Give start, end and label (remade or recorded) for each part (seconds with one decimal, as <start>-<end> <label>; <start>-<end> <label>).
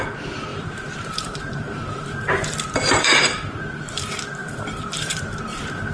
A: 0.0-0.5 recorded; 0.5-4.0 remade; 4.0-4.4 recorded; 4.4-5.4 remade; 5.4-5.9 recorded